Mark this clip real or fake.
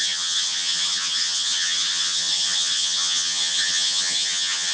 fake